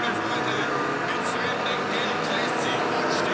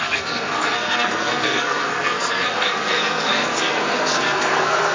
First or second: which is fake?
second